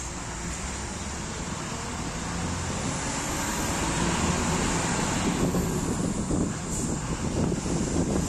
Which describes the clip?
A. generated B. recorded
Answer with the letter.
B